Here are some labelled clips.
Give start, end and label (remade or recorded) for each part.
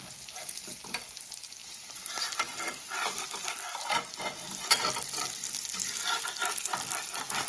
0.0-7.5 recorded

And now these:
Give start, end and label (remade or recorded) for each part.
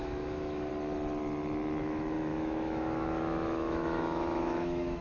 0.0-0.7 remade; 0.7-1.8 recorded; 1.8-5.0 remade